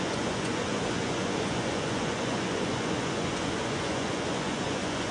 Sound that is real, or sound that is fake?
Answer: fake